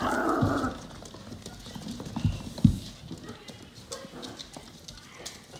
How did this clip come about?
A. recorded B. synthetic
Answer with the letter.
A